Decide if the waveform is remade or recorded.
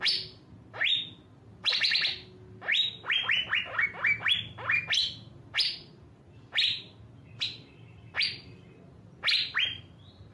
recorded